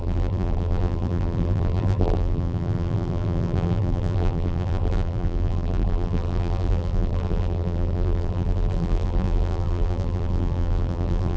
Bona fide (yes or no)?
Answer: no